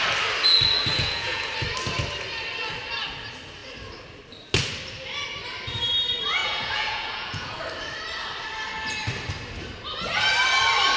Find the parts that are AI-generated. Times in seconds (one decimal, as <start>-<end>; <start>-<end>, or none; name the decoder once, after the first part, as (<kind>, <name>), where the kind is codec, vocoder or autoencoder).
0.9-1.5 (vocoder, Vocos); 6.4-7.6